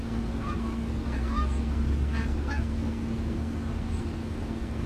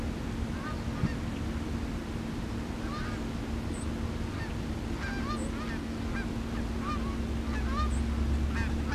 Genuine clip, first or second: second